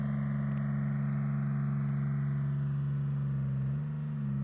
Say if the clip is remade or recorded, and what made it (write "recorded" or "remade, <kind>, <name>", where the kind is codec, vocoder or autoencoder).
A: recorded